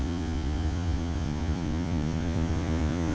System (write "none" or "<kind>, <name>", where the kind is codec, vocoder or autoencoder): vocoder, Vocos